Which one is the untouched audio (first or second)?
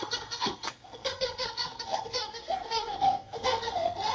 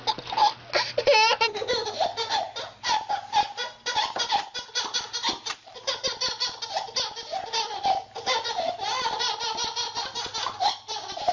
second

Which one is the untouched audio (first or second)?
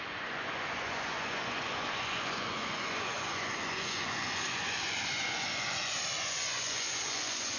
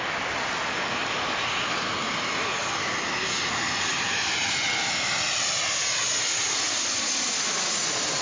second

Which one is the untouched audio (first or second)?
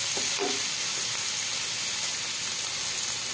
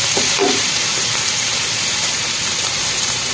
first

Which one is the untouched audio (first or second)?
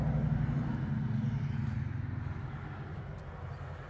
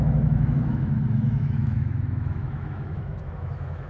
first